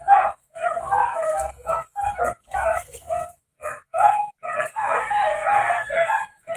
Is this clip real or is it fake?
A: fake